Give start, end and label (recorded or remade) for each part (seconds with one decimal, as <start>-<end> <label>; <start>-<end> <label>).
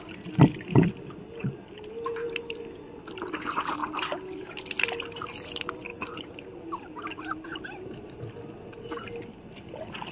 0.0-5.9 recorded; 5.9-8.2 remade; 8.2-10.1 recorded